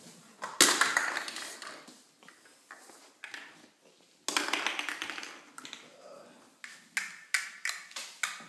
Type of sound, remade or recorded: recorded